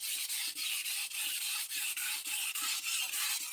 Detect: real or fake real